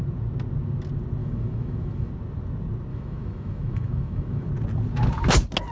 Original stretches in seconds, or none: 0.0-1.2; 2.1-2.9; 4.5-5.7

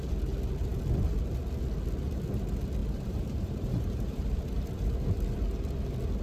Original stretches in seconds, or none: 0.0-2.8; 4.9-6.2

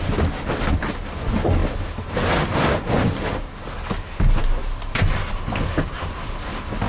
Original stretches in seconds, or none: 0.0-6.9

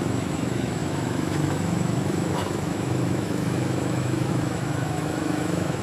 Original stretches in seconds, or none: none

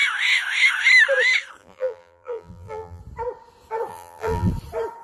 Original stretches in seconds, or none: 0.0-1.6; 3.0-3.9; 4.5-5.0

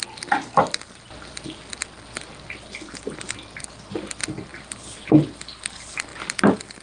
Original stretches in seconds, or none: 0.0-6.8

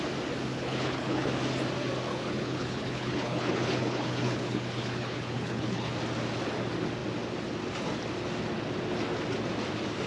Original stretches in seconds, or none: 0.0-0.5; 1.3-2.1; 5.9-10.1

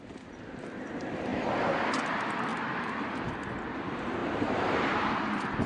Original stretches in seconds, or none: 0.0-4.2